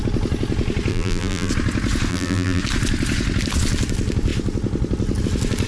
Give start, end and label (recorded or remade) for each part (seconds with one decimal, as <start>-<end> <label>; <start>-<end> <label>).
0.0-0.9 recorded; 0.9-1.5 remade; 1.5-2.1 recorded; 2.1-2.6 remade; 2.6-5.7 recorded